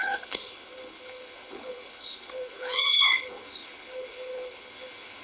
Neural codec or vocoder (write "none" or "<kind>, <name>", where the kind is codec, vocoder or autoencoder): codec, HILCodec